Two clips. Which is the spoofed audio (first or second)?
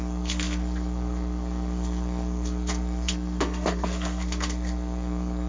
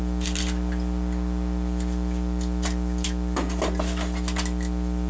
first